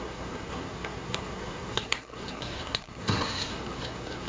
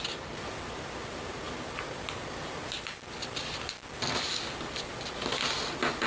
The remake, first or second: first